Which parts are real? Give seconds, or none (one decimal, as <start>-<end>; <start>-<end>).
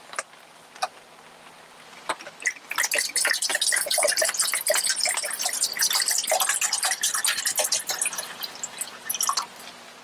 0.0-10.0